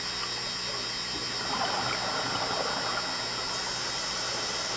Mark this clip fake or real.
real